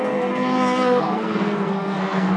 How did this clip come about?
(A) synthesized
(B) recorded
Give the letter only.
A